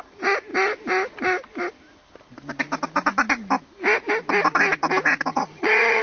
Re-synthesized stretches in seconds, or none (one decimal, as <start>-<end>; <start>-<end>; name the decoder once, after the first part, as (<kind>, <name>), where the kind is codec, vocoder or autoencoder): 5.3-6.0 (vocoder, HiFi-GAN)